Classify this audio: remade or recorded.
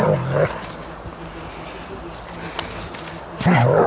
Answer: recorded